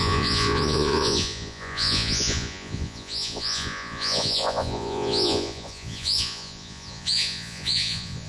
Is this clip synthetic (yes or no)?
yes